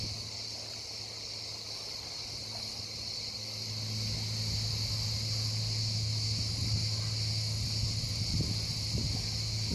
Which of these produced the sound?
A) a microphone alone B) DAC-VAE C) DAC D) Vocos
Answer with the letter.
A